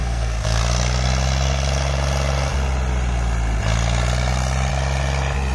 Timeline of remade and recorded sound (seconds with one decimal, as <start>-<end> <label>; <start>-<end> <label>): 0.0-0.6 remade; 0.6-5.5 recorded